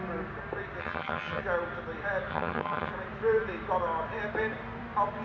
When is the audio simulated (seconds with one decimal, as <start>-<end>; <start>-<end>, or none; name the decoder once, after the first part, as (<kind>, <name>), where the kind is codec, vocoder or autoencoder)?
0.8-1.4 (vocoder, HiFi-GAN); 2.3-2.9